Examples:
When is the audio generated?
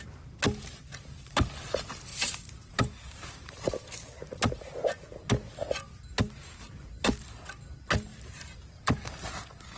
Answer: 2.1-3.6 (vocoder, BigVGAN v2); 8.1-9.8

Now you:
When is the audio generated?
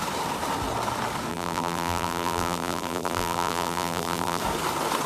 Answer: 1.3-4.4 (vocoder, BigVGAN v2)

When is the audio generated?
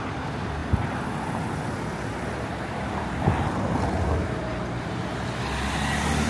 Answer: none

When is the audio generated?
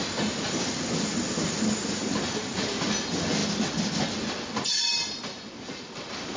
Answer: none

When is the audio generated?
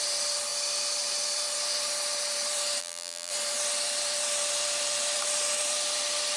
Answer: 2.8-3.3 (vocoder, BigVGAN v2)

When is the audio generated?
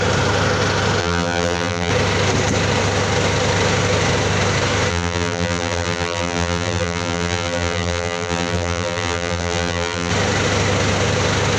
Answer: 1.0-1.9 (vocoder, BigVGAN v2); 4.9-10.1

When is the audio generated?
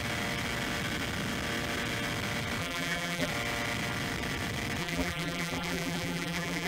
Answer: 2.6-3.3 (vocoder, BigVGAN v2); 4.8-6.7